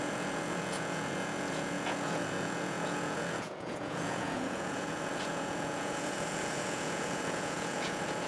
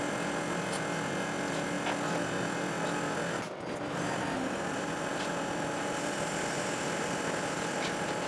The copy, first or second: first